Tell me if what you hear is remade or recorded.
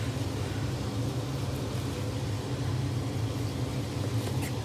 recorded